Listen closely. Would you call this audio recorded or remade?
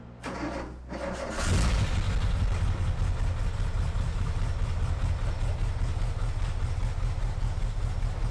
recorded